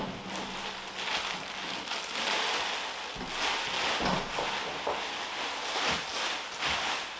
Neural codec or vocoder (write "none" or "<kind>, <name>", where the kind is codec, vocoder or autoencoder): none